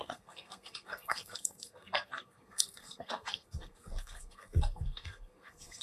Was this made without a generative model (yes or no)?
no